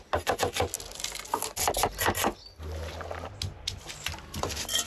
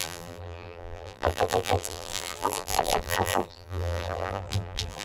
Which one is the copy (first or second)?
second